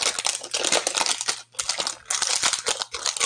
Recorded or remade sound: recorded